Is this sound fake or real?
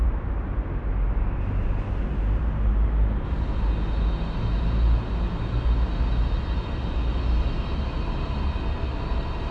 real